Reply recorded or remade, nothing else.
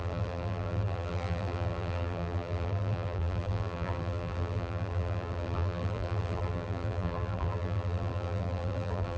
remade